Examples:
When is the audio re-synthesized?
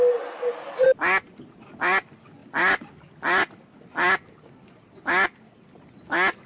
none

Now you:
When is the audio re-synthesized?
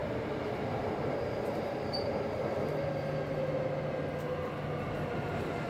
0.0-2.4 (vocoder, BigVGAN v2)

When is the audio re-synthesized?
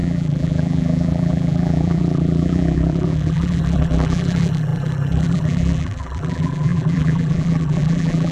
0.0-8.3 (vocoder, BigVGAN v2)